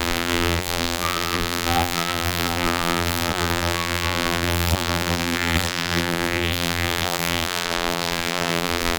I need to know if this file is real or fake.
fake